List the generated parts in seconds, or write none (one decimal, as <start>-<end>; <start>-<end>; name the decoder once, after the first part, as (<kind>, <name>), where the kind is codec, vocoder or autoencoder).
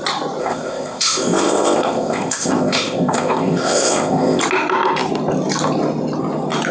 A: 0.4-4.4 (codec, ZipCodec)